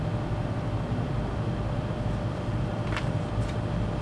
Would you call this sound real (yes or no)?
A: no